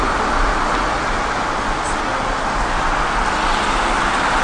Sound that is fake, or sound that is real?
real